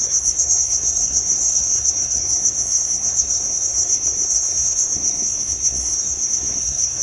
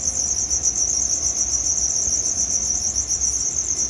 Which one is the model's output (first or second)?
first